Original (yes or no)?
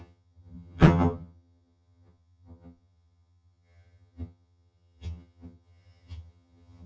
no